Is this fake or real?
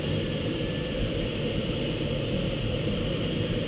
fake